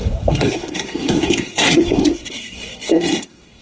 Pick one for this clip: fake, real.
fake